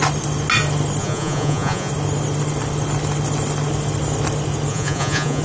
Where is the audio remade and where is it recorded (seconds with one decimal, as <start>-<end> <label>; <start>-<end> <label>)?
0.0-1.0 recorded; 1.0-1.9 remade; 1.9-4.7 recorded; 4.7-5.4 remade